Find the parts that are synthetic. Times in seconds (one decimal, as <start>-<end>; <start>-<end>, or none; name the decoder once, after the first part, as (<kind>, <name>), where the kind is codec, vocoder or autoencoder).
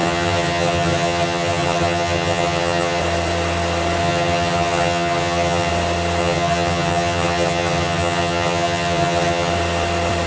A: 0.0-3.0 (vocoder, HiFi-GAN); 4.0-5.7; 6.2-9.5